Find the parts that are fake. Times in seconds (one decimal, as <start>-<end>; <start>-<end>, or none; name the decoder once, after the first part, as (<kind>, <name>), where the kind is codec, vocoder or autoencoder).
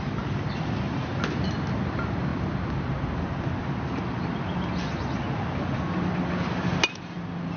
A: none